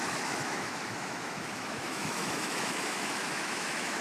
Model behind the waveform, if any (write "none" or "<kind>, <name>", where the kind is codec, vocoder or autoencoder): autoencoder, DAC-VAE